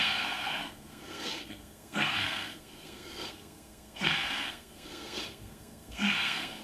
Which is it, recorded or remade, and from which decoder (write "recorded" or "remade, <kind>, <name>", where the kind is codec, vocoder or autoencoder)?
remade, codec, SNAC